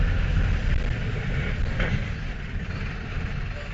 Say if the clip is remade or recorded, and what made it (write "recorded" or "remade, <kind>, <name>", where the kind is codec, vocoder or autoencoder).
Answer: recorded